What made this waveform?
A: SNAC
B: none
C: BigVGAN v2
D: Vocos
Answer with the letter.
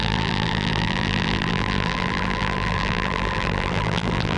C